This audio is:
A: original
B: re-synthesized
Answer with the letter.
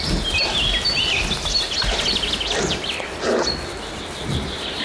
A